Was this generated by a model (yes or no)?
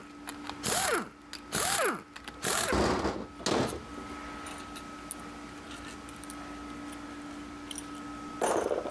no